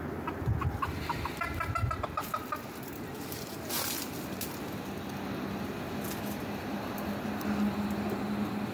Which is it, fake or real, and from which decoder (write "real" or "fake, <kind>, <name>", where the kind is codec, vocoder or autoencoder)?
real